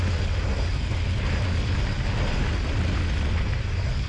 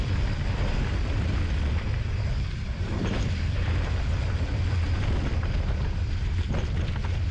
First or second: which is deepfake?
second